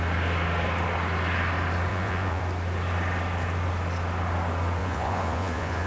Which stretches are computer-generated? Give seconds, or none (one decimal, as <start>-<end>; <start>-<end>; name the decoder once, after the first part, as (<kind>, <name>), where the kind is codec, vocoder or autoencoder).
1.9-2.4 (vocoder, Vocos); 4.8-5.9

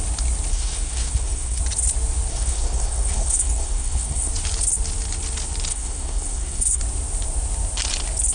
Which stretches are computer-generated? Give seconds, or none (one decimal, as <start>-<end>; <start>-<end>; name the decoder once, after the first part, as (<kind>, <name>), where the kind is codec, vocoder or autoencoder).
0.5-1.6 (codec, SNAC); 2.3-4.3; 5.7-6.8

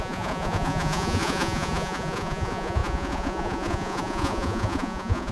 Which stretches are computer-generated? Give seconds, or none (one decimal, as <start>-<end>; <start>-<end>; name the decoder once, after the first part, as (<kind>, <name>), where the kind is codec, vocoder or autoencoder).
0.0-5.3 (vocoder, Vocos)

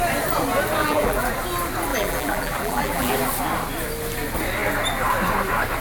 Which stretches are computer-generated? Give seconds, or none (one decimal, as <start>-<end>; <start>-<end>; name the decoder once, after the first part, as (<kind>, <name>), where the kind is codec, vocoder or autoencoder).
0.8-1.3 (vocoder, BigVGAN v2); 1.9-3.1

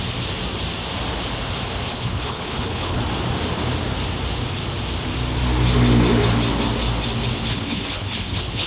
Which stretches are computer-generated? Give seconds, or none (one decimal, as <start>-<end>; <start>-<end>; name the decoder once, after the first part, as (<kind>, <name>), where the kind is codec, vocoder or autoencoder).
1.9-3.0 (codec, HILCodec); 7.5-8.7

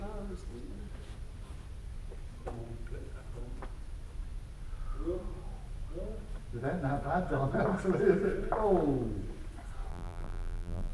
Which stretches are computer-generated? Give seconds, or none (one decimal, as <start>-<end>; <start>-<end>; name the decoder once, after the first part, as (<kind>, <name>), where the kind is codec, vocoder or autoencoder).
9.9-10.9 (vocoder, BigVGAN v2)

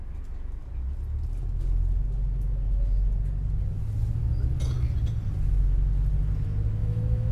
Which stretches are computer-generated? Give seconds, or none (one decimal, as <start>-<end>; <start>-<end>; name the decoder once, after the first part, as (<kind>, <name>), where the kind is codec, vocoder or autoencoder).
6.8-7.3 (autoencoder, DAC-VAE)